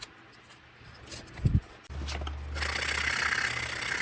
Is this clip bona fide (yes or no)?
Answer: yes